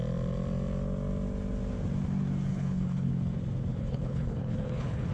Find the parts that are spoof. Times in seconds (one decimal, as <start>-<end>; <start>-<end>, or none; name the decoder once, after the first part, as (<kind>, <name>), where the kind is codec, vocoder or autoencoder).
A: 2.5-3.1 (codec, HILCodec); 3.7-5.1